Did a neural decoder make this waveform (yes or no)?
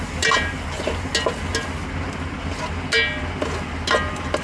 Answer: no